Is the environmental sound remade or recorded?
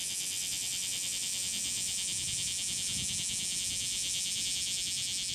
recorded